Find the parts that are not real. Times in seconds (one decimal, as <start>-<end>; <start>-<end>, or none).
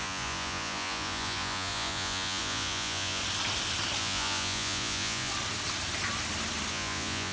0.0-3.2; 4.0-5.3; 6.7-7.3